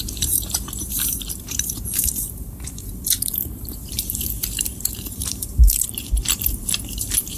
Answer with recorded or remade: remade